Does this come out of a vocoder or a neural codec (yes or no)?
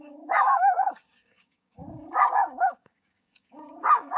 yes